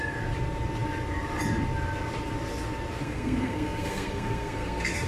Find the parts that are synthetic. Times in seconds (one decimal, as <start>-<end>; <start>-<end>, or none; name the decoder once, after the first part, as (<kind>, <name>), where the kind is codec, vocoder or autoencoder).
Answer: 3.0-5.1 (codec, SNAC)

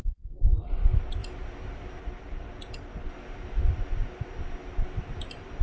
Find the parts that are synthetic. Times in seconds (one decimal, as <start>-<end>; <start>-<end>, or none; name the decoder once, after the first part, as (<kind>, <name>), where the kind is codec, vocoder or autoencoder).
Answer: 0.0-0.7 (codec, SNAC)

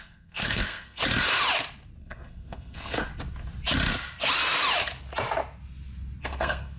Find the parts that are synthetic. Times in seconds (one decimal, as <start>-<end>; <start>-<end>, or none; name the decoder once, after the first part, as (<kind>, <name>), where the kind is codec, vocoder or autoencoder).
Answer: 0.0-1.0 (codec, SNAC); 2.0-3.1; 6.2-6.8

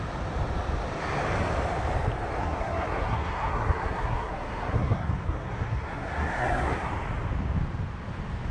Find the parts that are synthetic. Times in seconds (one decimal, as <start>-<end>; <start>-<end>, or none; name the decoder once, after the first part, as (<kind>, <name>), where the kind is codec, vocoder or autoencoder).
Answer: 2.4-6.9 (codec, SNAC)

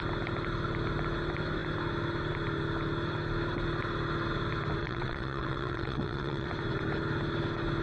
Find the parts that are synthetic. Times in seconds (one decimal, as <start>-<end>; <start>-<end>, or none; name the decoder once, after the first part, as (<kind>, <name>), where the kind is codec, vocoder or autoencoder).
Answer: 4.8-6.5 (vocoder, WaveNeXt)